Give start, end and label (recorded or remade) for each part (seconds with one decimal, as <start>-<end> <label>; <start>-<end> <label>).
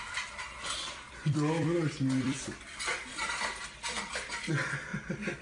0.0-4.9 remade; 4.9-5.4 recorded